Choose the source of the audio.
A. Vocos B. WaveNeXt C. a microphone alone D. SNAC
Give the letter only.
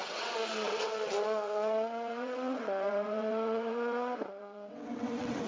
B